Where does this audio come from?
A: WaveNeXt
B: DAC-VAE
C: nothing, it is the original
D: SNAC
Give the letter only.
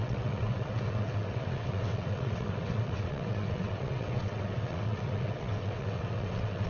A